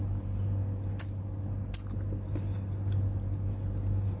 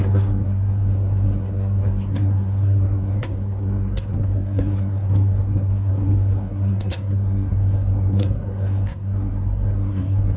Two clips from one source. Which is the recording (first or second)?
first